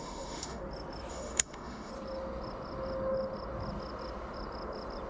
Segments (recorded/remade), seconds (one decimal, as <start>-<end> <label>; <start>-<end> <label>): 0.0-0.6 remade; 0.6-1.1 recorded; 1.1-1.9 remade; 1.9-5.1 recorded